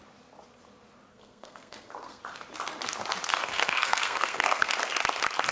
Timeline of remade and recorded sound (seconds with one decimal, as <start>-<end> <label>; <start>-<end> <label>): 0.0-1.1 recorded; 1.1-2.2 remade; 2.2-3.3 recorded; 3.3-4.7 remade; 4.7-5.5 recorded